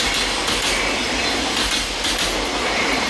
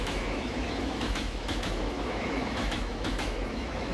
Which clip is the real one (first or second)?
first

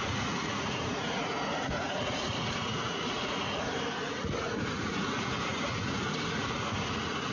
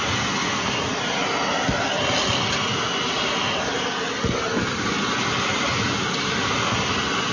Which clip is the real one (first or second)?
second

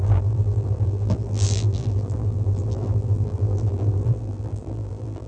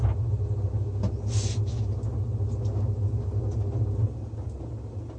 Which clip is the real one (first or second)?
second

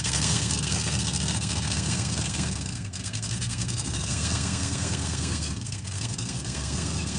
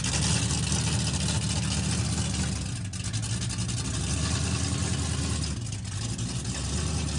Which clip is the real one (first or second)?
second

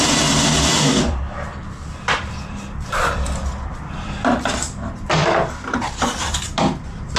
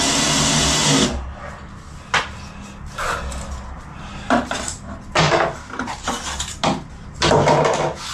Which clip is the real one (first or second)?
second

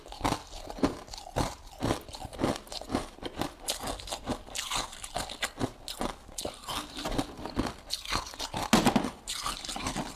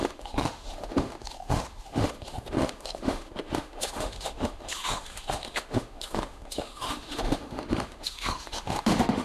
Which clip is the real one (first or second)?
first